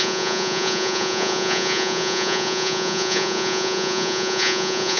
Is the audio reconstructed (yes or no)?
yes